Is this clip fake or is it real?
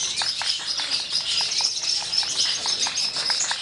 real